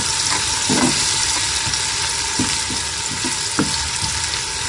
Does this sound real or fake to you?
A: real